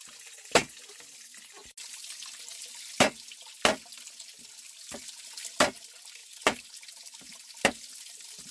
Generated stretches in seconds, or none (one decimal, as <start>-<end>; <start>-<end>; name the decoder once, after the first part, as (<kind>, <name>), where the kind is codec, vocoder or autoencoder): 6.2-7.6 (vocoder, BigVGAN v2)